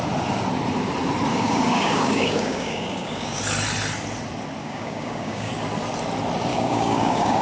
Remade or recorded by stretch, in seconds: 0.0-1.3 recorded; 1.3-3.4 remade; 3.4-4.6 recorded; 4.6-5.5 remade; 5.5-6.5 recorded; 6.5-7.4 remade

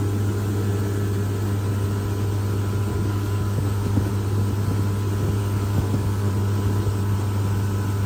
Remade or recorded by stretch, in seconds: 0.0-2.9 recorded; 2.9-4.1 remade; 4.1-5.4 recorded; 5.4-6.3 remade; 6.3-8.1 recorded

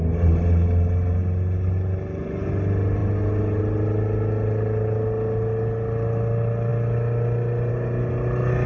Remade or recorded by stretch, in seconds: 0.0-8.7 recorded

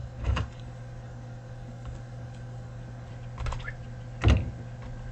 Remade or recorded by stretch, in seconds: 0.0-3.1 remade; 3.1-5.1 recorded